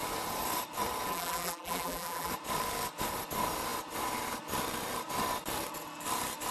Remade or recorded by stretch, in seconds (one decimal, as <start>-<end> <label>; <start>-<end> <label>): 0.0-1.1 recorded; 1.1-2.3 remade; 2.3-6.5 recorded

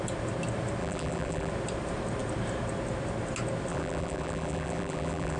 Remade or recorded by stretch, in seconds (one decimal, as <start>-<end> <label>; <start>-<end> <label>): 0.0-0.8 recorded; 0.8-1.5 remade; 1.5-3.7 recorded; 3.7-5.4 remade

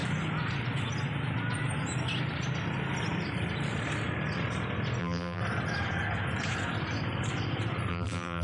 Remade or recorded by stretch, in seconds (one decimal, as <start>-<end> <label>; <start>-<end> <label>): 0.0-5.0 recorded; 5.0-5.4 remade; 5.4-7.9 recorded; 7.9-8.4 remade

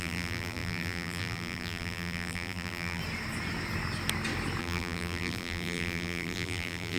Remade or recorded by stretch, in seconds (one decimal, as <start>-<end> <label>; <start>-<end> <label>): 0.0-3.0 remade; 3.0-4.6 recorded; 4.6-7.0 remade

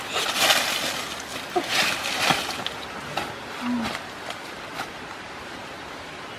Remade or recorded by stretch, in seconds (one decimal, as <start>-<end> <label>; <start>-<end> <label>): 0.0-6.4 recorded